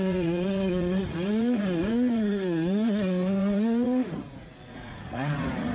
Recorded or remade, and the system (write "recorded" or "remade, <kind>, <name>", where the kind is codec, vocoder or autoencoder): remade, vocoder, Vocos